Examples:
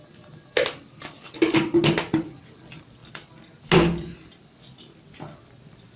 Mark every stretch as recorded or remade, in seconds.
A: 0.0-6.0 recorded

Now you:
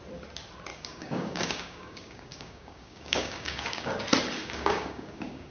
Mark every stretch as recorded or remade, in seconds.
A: 0.0-0.7 recorded; 0.7-3.9 remade; 3.9-4.4 recorded; 4.4-5.5 remade